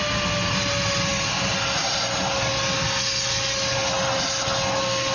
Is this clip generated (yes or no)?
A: no